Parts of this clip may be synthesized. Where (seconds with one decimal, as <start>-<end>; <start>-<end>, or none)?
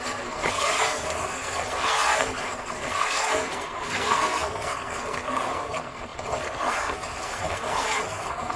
0.0-8.6